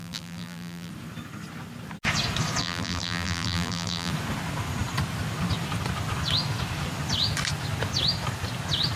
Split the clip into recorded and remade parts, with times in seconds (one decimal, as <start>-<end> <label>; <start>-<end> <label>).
0.0-0.9 remade; 0.9-2.6 recorded; 2.6-4.1 remade; 4.1-9.0 recorded